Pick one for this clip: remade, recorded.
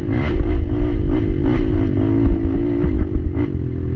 recorded